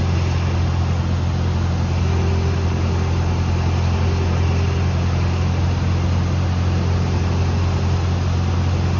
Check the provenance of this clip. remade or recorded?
recorded